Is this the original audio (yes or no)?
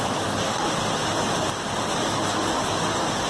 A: yes